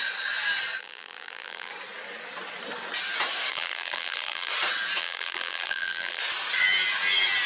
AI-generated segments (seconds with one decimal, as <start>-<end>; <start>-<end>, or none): 0.8-1.7; 3.5-4.5; 5.0-6.2

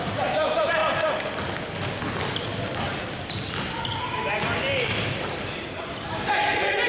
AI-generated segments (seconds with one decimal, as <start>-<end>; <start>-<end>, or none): 0.0-0.8; 2.1-2.5; 5.8-6.9

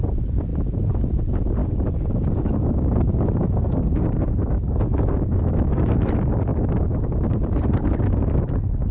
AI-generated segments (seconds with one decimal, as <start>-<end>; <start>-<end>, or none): 1.6-6.1

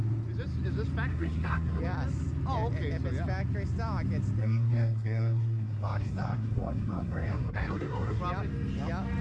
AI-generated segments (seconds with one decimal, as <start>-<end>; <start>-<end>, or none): 1.1-1.8; 4.4-8.2

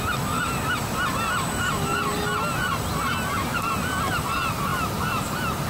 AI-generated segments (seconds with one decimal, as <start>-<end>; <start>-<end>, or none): none